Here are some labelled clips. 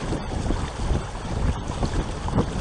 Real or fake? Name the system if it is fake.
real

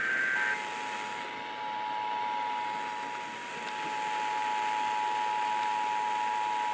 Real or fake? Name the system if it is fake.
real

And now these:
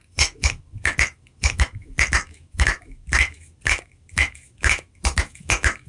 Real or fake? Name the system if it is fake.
fake, autoencoder, DAC-VAE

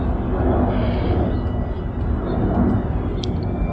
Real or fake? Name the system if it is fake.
real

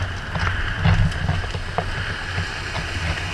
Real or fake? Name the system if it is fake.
real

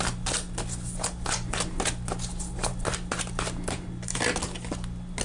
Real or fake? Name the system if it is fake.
real